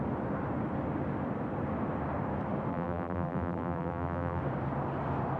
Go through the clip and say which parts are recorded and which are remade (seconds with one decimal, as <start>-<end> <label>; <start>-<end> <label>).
0.0-2.7 recorded; 2.7-4.4 remade; 4.4-5.4 recorded